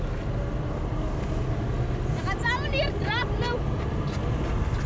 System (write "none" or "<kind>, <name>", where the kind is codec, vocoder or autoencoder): none